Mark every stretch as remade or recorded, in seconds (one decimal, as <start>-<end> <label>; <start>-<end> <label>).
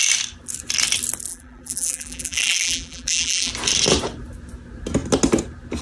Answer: 0.0-1.3 recorded; 1.3-3.5 remade; 3.5-5.8 recorded